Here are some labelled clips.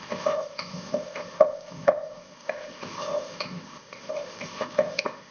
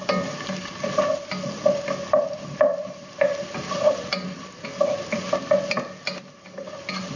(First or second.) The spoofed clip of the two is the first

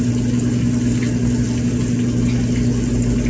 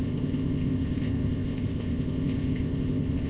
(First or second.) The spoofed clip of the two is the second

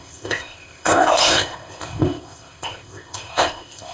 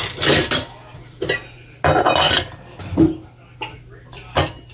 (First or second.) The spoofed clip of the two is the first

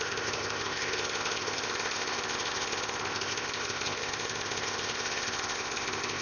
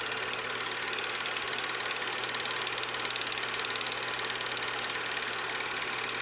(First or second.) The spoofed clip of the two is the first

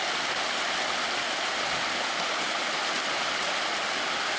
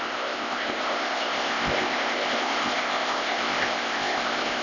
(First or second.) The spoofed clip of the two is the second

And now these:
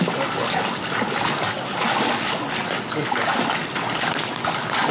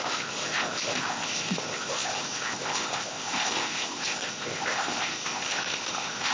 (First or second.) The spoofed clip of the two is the second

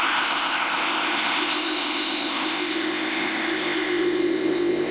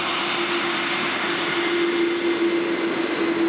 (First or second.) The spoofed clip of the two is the first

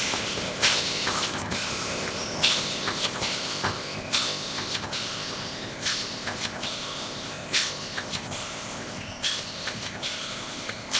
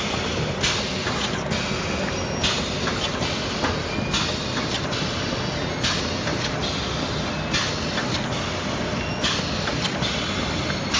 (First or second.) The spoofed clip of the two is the first